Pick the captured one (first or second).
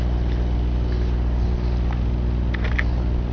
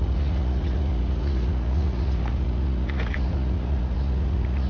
first